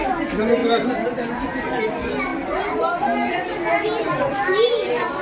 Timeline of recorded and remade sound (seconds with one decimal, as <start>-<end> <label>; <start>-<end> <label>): 0.0-5.2 recorded